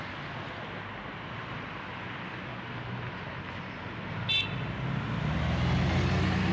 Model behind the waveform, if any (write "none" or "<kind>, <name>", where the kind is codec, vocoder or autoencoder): none